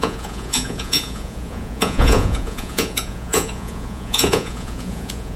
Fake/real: fake